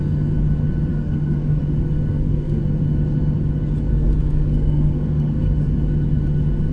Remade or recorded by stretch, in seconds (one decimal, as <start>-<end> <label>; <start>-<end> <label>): 0.0-0.9 recorded; 0.9-1.6 remade; 1.6-2.1 recorded; 2.1-2.6 remade; 2.6-3.9 recorded; 3.9-5.5 remade; 5.5-6.7 recorded